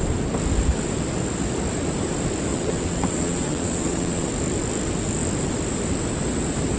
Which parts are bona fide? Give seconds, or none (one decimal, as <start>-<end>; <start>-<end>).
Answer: 0.0-2.5; 4.3-6.8